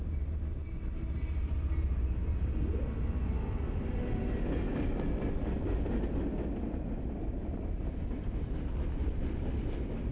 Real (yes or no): yes